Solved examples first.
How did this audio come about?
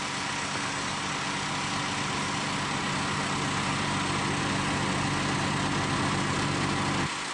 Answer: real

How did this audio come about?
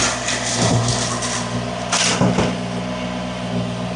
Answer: real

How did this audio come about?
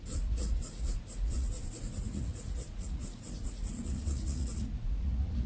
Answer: fake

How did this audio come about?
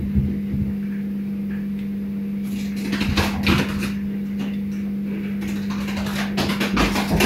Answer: real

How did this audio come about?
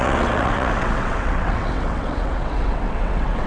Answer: fake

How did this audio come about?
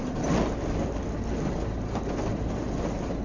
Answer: real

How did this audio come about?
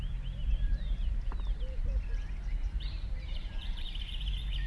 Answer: fake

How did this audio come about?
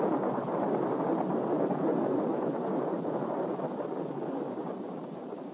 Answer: fake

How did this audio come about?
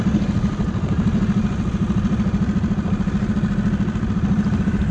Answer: real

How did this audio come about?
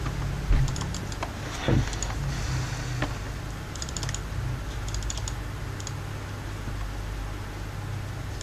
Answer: real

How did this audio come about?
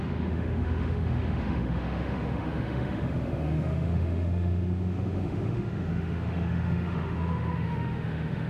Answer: fake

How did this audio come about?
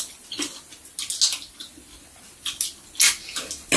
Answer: real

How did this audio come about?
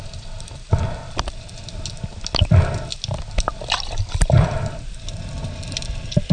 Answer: real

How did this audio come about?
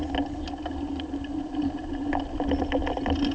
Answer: real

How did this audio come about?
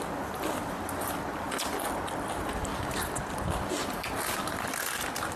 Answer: real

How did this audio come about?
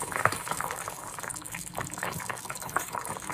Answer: fake